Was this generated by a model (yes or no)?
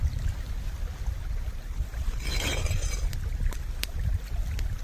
no